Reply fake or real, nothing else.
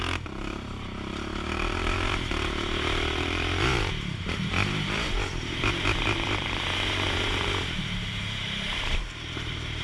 fake